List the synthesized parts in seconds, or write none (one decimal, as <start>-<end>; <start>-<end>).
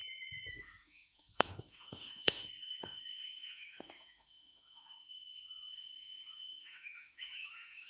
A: 0.5-7.9